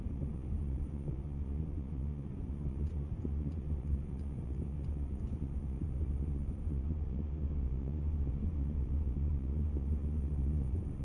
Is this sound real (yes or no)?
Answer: no